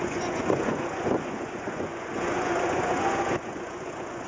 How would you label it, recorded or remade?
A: remade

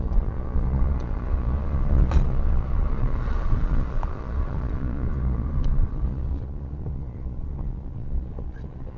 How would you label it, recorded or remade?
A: remade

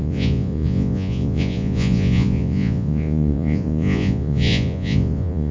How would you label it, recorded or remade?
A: remade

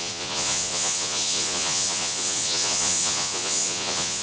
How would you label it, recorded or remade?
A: remade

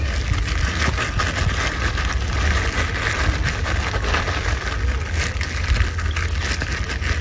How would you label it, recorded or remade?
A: recorded